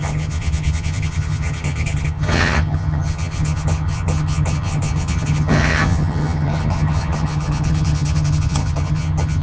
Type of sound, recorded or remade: remade